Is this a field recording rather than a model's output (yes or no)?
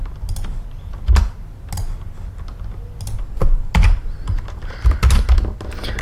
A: yes